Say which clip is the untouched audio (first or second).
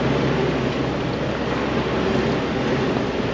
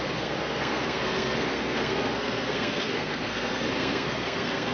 first